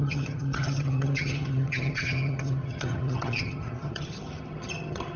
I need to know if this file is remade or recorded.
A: remade